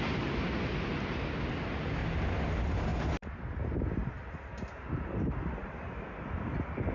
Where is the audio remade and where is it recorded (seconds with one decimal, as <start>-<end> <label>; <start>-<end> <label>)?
0.0-6.9 recorded